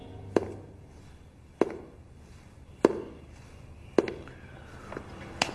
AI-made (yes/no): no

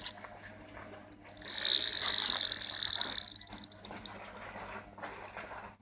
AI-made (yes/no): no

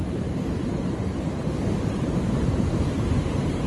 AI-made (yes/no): yes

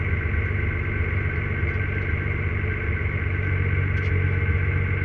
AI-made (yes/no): no